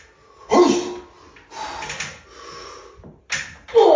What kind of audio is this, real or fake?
real